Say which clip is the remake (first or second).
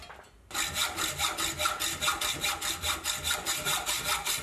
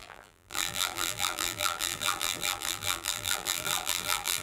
second